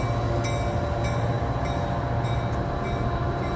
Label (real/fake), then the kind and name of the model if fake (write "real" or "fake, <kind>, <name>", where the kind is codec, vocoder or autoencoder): real